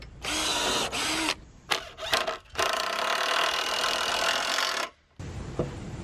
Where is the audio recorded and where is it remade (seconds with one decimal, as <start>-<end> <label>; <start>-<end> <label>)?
0.0-6.0 recorded